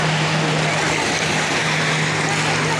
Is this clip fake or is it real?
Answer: real